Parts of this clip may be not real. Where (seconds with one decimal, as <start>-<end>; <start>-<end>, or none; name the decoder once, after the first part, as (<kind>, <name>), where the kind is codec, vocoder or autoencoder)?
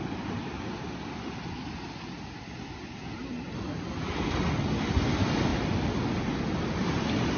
5.5-6.2 (vocoder, BigVGAN v2)